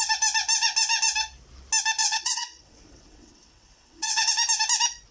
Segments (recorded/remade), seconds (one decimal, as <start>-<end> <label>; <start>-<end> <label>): 0.0-2.0 recorded; 2.0-4.3 remade; 4.3-5.1 recorded